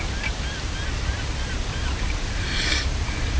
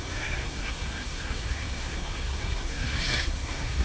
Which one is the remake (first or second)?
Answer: second